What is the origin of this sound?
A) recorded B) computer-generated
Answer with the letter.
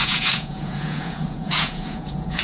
B